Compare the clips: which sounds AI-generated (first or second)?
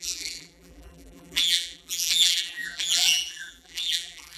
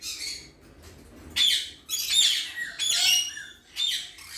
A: first